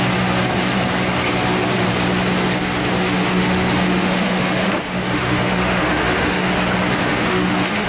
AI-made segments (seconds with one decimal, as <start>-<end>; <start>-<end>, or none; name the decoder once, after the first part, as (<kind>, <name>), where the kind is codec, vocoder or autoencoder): 3.0-6.5 (autoencoder, DAC-VAE); 7.0-7.9